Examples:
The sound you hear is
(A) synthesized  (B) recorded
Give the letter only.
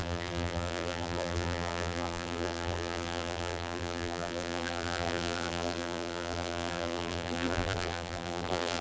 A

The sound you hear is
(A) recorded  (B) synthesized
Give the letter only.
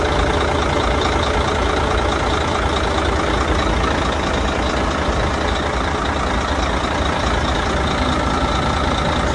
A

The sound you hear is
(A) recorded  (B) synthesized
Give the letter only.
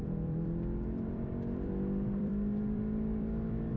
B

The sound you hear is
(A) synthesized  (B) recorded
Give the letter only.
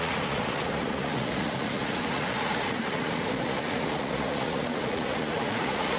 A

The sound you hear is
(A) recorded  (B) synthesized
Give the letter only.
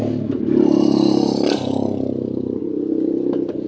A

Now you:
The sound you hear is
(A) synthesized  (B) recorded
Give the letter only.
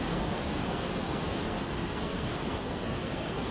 A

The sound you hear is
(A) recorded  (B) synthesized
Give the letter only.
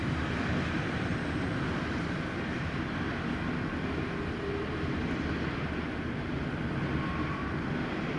A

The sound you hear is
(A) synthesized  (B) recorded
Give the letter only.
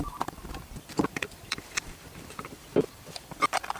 A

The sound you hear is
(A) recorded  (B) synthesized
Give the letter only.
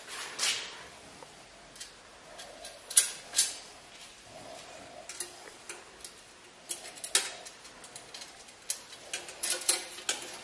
A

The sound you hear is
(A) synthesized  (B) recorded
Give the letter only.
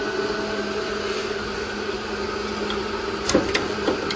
B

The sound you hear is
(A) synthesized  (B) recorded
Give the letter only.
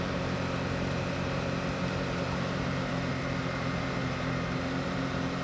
A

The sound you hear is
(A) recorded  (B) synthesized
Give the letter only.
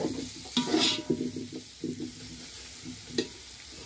A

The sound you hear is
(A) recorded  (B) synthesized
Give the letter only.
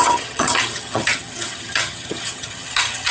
B